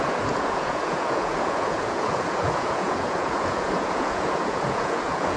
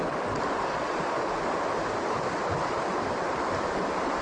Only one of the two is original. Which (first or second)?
second